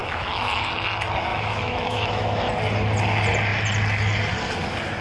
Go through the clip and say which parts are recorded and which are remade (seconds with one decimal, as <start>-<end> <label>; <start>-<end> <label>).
0.0-0.7 remade; 0.7-1.3 recorded; 1.3-2.5 remade; 2.5-5.0 recorded